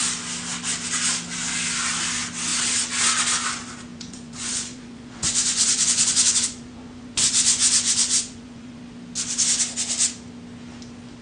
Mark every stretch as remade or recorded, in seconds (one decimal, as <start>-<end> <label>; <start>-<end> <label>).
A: 0.0-3.9 recorded; 3.9-8.8 remade; 8.8-11.2 recorded

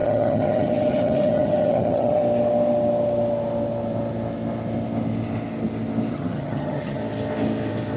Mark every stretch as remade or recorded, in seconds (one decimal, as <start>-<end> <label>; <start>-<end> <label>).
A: 0.0-2.2 remade; 2.2-6.1 recorded; 6.1-7.0 remade; 7.0-8.0 recorded

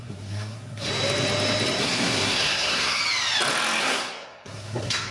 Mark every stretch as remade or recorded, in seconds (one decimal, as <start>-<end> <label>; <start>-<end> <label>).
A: 0.0-0.9 remade; 0.9-1.8 recorded; 1.8-3.0 remade; 3.0-3.8 recorded; 3.8-5.1 remade